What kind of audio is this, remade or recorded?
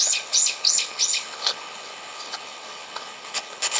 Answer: remade